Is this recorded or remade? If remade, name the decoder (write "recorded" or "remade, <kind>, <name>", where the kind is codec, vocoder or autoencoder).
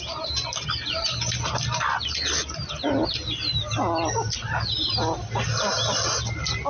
recorded